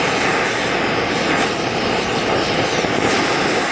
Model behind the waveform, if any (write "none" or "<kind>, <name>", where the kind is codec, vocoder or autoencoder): none